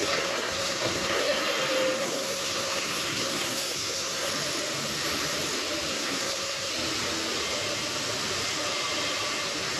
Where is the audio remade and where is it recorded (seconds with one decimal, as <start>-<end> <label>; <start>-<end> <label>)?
0.0-1.4 remade; 1.4-2.0 recorded; 2.0-4.3 remade; 4.3-5.9 recorded; 5.9-6.7 remade; 6.7-9.8 recorded